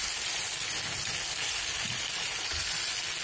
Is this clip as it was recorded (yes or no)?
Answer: yes